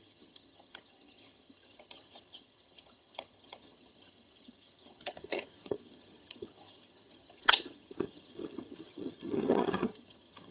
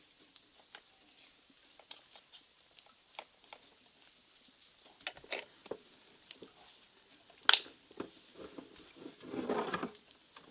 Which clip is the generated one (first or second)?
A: first